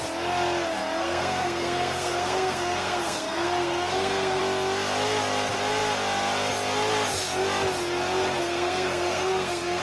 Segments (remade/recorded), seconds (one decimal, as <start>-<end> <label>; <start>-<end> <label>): 0.0-1.0 recorded; 1.0-4.4 remade; 4.4-8.4 recorded; 8.4-9.8 remade

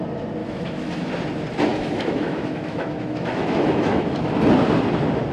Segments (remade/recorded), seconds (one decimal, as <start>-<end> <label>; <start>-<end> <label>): 0.0-0.4 recorded; 0.4-1.1 remade; 1.1-1.7 recorded; 1.7-4.3 remade; 4.3-5.3 recorded

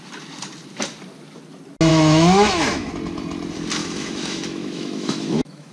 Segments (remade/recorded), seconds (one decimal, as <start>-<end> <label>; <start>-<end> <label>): 0.0-1.9 recorded; 1.9-2.9 remade; 2.9-3.8 recorded; 3.8-5.7 remade